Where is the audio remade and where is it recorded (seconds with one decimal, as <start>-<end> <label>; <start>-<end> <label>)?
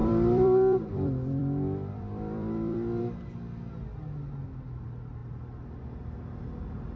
0.0-3.0 remade; 3.0-7.0 recorded